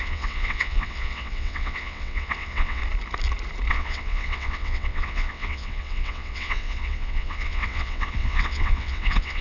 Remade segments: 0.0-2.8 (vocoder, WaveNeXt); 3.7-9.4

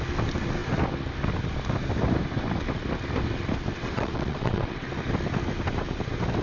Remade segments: 3.8-4.9 (vocoder, WaveNeXt)

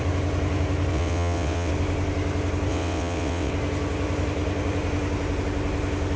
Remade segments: 0.9-1.7 (vocoder, WaveNeXt); 2.7-3.5

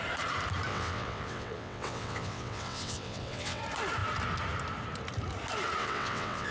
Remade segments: 0.7-3.6 (vocoder, WaveNeXt); 5.8-6.5

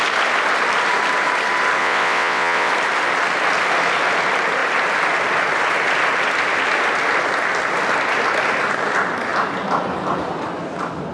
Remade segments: 1.8-2.7 (vocoder, WaveNeXt)